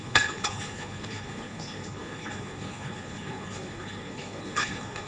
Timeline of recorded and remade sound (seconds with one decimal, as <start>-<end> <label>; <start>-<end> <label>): 0.0-5.1 remade